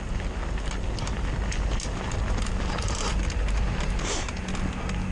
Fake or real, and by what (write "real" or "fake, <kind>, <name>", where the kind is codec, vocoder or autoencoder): real